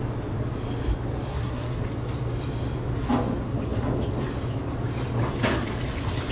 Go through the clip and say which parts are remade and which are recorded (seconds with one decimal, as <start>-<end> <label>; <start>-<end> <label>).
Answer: 0.0-1.3 recorded; 1.3-1.8 remade; 1.8-6.3 recorded